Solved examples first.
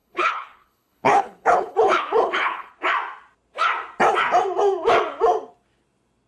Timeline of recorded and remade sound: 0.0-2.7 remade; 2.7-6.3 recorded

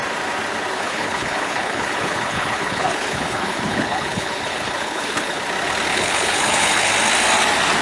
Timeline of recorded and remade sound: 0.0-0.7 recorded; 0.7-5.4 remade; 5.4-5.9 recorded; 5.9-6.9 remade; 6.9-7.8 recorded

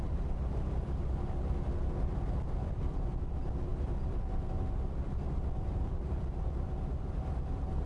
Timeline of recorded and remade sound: 0.0-7.9 recorded

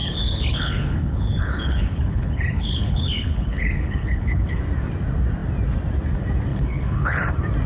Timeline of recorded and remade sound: 0.0-4.6 remade; 4.6-6.5 recorded; 6.5-7.3 remade; 7.3-7.7 recorded

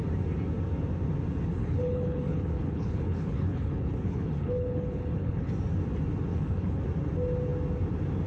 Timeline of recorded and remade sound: 0.0-1.6 recorded; 1.6-5.5 remade; 5.5-6.3 recorded; 6.3-6.8 remade; 6.8-8.3 recorded

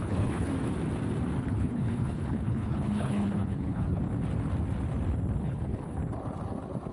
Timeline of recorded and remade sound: 0.0-0.5 remade; 0.5-1.4 recorded; 1.4-4.0 remade; 4.0-5.4 recorded; 5.4-6.0 remade; 6.0-6.9 recorded

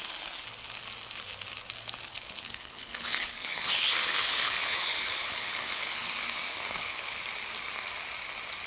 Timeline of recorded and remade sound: 0.0-2.1 recorded; 2.1-6.1 remade; 6.1-6.5 recorded; 6.5-7.2 remade; 7.2-8.7 recorded

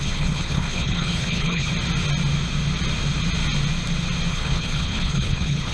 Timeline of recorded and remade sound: 0.0-1.7 remade; 1.7-4.3 recorded; 4.3-5.7 remade